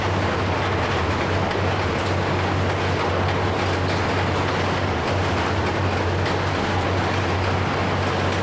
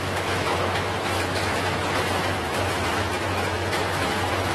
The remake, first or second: second